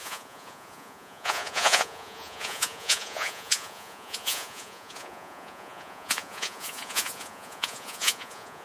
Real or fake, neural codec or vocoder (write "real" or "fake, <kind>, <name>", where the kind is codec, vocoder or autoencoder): fake, vocoder, Vocos